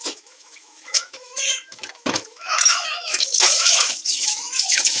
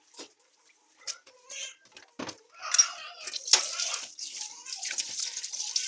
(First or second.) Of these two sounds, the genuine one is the second